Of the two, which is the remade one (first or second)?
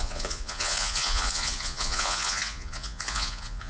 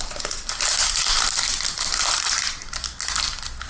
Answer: first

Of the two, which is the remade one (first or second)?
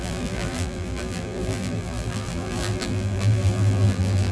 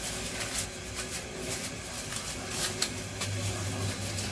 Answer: first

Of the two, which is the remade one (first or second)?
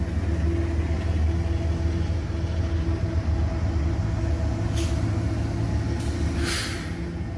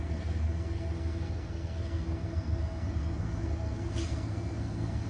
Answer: second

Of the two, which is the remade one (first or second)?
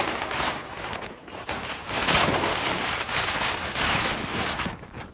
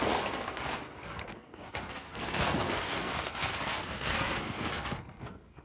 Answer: second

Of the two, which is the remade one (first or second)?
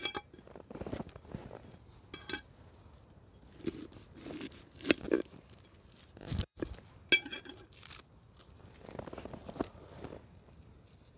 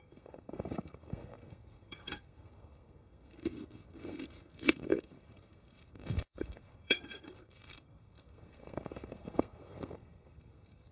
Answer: second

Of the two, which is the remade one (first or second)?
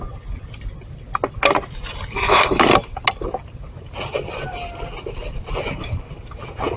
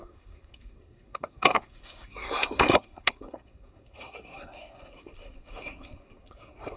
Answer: second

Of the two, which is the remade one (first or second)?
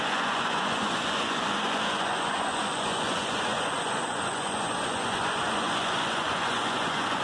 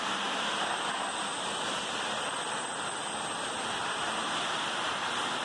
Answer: first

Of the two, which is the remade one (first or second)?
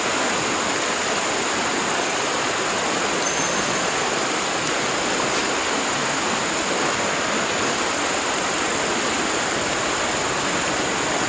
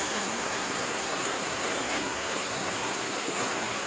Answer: second